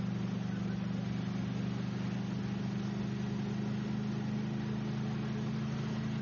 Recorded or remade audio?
recorded